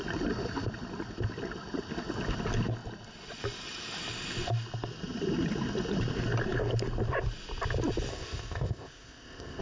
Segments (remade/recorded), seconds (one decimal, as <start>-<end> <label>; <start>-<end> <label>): 0.0-8.1 recorded; 8.1-9.6 remade